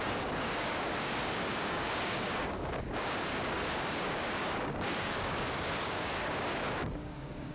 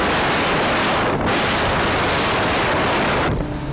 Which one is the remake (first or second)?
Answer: first